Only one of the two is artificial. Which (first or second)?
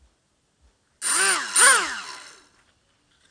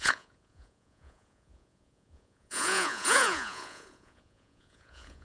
second